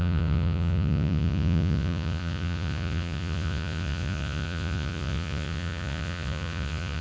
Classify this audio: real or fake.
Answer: fake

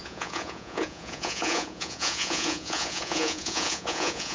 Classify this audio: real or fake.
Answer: fake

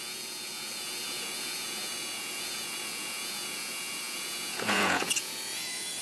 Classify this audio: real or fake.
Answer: fake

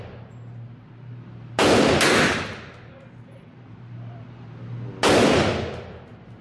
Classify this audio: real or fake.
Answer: real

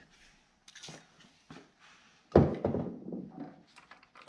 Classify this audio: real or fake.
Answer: real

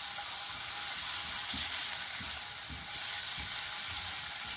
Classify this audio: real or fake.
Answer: real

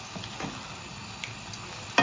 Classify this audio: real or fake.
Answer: real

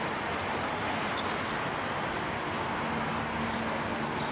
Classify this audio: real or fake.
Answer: real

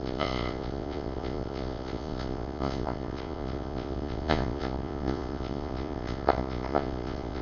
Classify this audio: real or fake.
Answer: fake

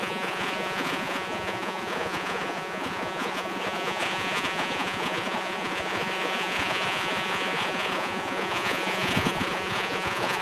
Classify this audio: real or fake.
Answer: fake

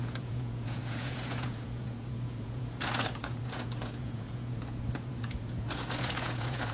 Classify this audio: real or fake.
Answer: fake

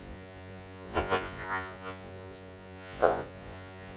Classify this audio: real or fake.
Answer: fake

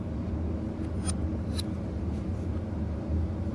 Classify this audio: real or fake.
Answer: real